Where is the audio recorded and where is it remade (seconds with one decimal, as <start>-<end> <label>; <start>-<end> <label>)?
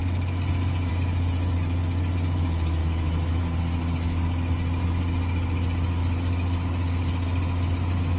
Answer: 0.0-2.8 recorded; 2.8-3.4 remade; 3.4-8.2 recorded